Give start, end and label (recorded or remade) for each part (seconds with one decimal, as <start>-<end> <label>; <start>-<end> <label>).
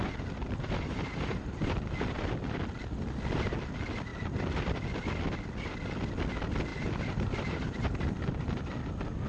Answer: 0.0-0.4 recorded; 0.4-1.8 remade; 1.8-6.7 recorded; 6.7-8.6 remade; 8.6-9.3 recorded